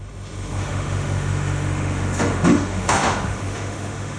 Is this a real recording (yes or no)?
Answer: no